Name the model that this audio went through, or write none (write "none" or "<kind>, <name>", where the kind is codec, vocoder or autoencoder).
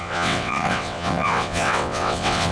vocoder, WaveNeXt